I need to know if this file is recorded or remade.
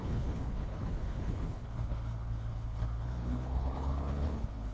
remade